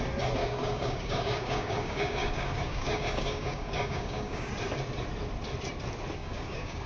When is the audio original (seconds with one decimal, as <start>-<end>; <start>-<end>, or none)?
0.0-0.4; 4.5-6.2